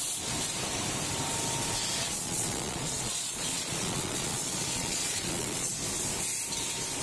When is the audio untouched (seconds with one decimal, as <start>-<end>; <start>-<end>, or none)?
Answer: 0.0-2.0; 5.7-7.0